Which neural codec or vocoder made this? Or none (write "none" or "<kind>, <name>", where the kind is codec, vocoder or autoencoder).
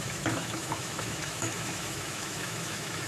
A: autoencoder, DAC-VAE